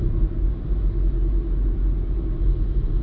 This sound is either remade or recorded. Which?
recorded